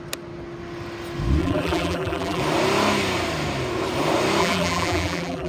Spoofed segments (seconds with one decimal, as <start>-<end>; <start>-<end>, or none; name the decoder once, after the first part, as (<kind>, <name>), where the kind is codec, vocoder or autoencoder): 1.4-2.4 (vocoder, BigVGAN v2); 4.4-5.5